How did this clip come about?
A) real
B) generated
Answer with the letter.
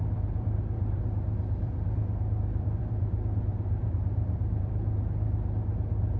B